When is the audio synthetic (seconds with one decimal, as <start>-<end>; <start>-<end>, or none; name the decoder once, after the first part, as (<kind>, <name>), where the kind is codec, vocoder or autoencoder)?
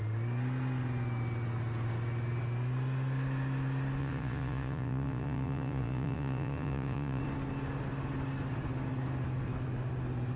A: 4.0-7.2 (vocoder, Vocos)